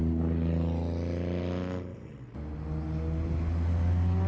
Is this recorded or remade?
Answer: recorded